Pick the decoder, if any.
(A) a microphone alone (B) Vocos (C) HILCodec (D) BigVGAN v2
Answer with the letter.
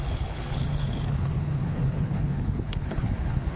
C